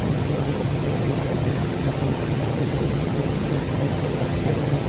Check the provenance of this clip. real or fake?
fake